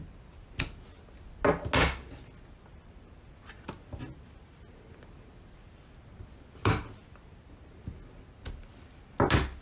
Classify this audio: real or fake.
real